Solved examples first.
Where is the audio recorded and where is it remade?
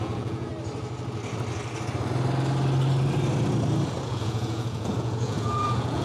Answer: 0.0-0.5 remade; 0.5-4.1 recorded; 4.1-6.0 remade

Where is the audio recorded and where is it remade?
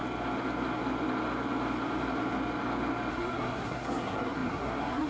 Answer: 0.0-3.1 recorded; 3.1-5.1 remade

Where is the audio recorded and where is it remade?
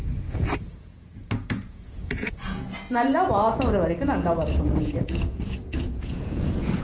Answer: 0.0-3.7 remade; 3.7-4.2 recorded; 4.2-6.8 remade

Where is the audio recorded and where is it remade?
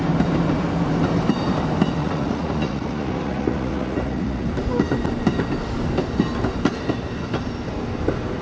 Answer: 0.0-2.0 recorded; 2.0-4.5 remade; 4.5-8.4 recorded